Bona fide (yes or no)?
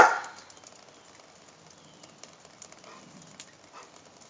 yes